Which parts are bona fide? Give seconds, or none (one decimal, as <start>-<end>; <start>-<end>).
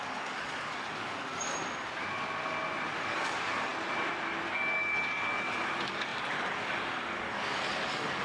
1.5-3.0; 3.7-4.5